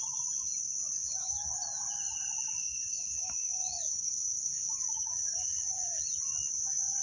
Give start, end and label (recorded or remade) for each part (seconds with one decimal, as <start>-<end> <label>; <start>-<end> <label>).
0.0-1.0 recorded; 1.0-1.6 remade; 1.6-2.6 recorded; 2.6-6.0 remade; 6.0-7.0 recorded